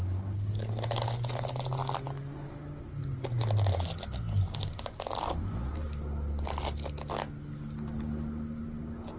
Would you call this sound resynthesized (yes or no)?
no